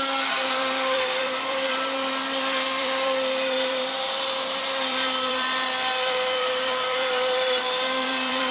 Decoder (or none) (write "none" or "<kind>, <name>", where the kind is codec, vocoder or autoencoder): vocoder, BigVGAN v2